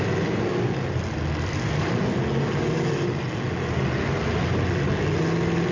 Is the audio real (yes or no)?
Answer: yes